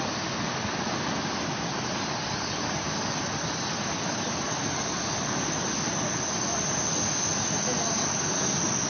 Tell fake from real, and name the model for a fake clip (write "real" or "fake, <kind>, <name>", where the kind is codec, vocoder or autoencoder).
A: real